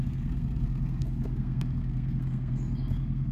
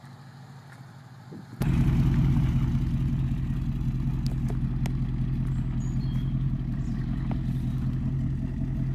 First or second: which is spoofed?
first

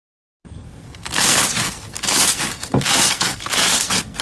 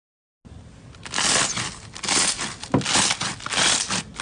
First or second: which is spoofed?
first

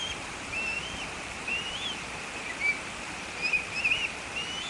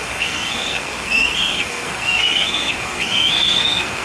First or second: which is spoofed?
second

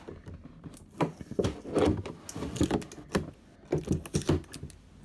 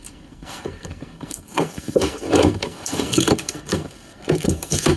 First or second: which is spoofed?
second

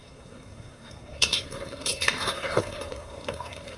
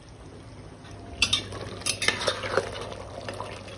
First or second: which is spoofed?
first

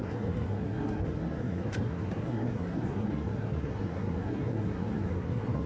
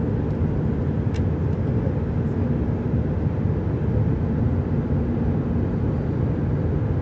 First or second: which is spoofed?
first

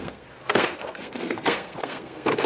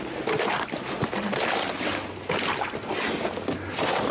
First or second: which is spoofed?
first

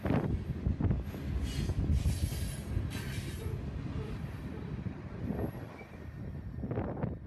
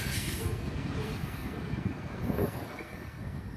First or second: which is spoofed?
second